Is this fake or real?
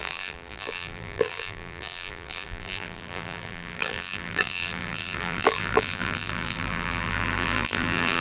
fake